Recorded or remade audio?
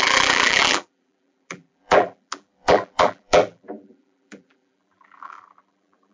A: remade